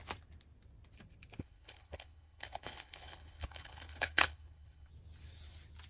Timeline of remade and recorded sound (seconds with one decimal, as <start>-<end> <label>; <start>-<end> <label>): 0.0-1.4 recorded; 1.4-4.9 remade; 4.9-5.9 recorded